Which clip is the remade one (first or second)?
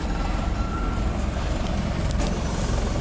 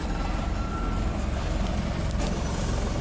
first